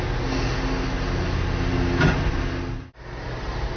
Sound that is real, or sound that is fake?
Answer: real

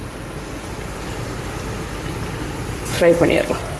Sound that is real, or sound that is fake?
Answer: real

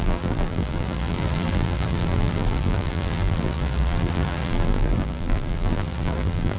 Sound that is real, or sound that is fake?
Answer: fake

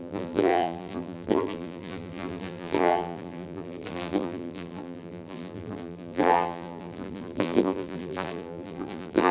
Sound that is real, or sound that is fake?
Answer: fake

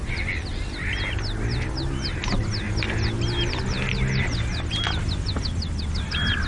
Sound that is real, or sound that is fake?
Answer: real